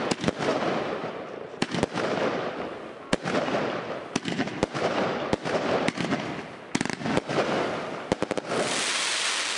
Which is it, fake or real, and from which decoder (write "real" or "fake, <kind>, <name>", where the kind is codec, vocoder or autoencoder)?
real